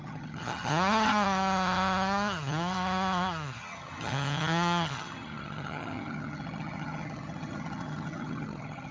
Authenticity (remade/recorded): remade